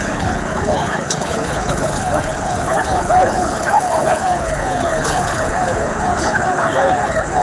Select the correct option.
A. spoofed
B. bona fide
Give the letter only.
A